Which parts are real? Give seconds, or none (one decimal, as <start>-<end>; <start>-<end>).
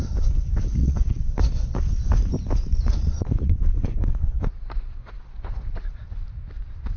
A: 0.0-0.8; 1.9-2.7; 6.0-7.0